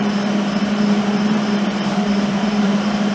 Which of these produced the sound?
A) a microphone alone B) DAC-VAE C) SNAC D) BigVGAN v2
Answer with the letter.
D